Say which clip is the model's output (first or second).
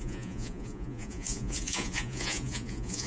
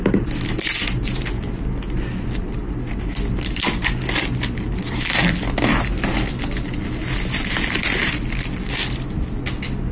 first